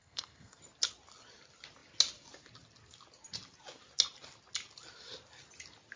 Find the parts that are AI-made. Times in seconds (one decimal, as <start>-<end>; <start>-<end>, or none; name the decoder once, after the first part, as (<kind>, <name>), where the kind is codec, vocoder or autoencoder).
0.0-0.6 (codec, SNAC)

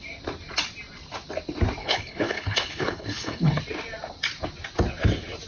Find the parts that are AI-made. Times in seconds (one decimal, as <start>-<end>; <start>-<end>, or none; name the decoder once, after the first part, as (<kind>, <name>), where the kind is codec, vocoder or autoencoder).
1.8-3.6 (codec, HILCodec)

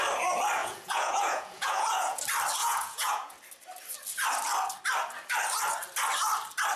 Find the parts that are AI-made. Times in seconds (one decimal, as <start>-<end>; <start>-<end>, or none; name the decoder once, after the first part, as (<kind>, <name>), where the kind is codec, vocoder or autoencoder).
0.6-2.2 (vocoder, Vocos); 2.6-3.3

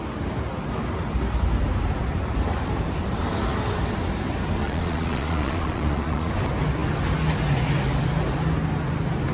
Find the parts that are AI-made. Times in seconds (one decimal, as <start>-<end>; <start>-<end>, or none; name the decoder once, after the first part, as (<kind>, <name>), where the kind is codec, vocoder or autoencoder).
4.6-6.3 (vocoder, Vocos)